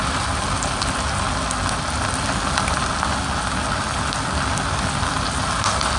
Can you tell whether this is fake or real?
real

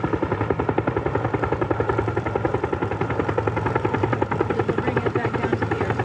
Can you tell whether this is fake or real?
fake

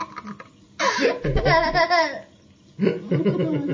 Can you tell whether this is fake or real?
real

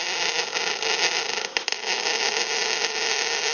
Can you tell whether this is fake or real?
real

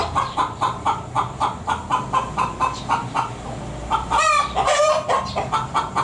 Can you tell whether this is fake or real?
fake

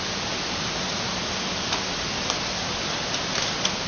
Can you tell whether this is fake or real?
real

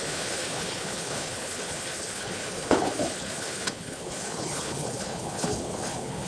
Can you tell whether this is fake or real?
fake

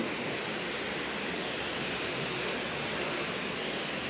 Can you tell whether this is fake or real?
real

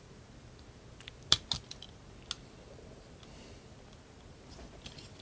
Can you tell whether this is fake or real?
real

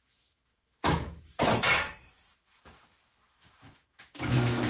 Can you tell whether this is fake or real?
fake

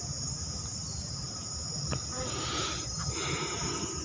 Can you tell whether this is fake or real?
real